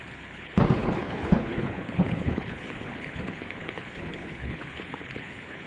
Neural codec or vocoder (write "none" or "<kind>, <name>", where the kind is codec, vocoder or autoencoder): codec, HILCodec